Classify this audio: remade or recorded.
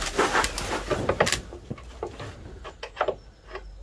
recorded